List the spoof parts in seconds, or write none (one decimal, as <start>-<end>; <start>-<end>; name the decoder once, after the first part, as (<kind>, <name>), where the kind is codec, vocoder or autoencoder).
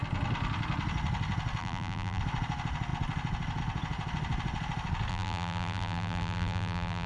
1.6-2.2 (vocoder, BigVGAN v2); 5.1-7.1